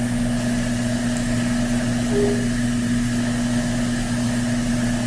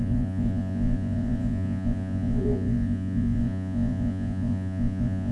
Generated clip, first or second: second